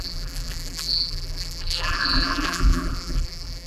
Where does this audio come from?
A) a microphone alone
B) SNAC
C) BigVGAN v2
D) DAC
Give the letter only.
C